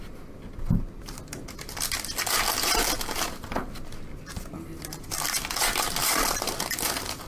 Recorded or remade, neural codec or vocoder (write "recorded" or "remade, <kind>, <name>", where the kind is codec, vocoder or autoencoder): recorded